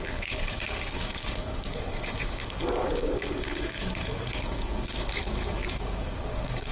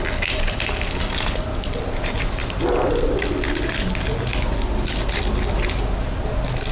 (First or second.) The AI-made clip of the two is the first